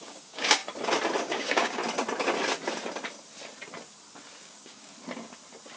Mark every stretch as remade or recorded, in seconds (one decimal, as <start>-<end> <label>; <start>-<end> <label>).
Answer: 0.0-0.6 remade; 0.6-1.2 recorded; 1.2-1.8 remade; 1.8-4.4 recorded; 4.4-4.9 remade; 4.9-5.8 recorded